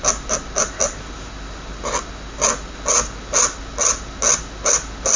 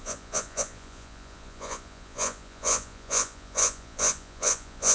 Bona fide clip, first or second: first